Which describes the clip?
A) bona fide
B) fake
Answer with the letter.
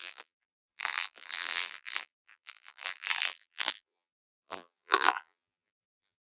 B